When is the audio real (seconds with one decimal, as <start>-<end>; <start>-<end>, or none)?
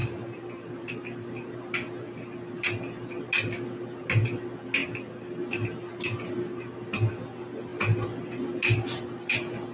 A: 0.9-9.7